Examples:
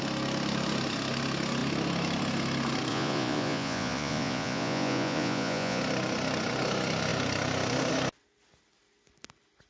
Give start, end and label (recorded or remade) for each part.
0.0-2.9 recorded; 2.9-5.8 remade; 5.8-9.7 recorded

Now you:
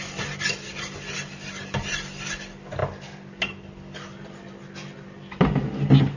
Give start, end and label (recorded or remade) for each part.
0.0-6.2 recorded

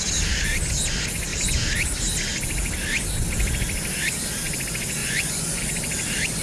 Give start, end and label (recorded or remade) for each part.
0.0-5.0 recorded; 5.0-5.6 remade; 5.6-6.4 recorded

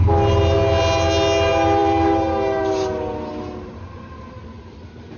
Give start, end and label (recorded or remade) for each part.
0.0-5.2 recorded

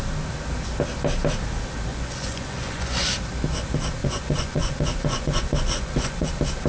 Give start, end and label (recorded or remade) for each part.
0.0-1.9 recorded; 1.9-3.1 remade; 3.1-4.0 recorded; 4.0-6.3 remade; 6.3-6.7 recorded